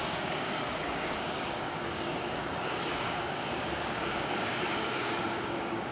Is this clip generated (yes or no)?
yes